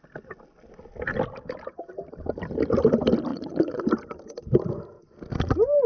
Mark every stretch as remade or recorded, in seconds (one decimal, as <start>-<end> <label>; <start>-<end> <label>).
0.0-3.3 recorded; 3.3-3.8 remade; 3.8-5.9 recorded